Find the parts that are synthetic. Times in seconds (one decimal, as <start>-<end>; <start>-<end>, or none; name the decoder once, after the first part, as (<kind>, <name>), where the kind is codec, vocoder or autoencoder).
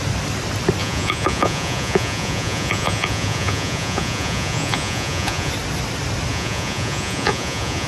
0.8-5.5 (vocoder, Vocos); 6.3-7.9